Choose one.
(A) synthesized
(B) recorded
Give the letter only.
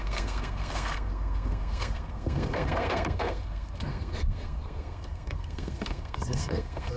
A